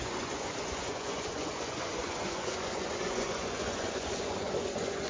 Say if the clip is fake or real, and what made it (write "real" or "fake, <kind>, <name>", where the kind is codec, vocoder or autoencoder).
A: fake, vocoder, Vocos